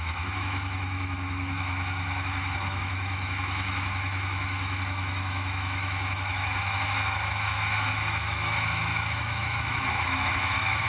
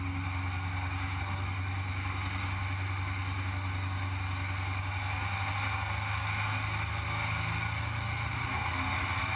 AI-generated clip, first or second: first